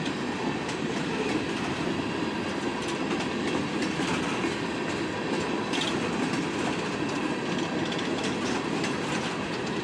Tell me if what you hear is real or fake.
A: real